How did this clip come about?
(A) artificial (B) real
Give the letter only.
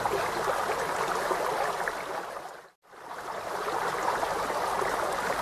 B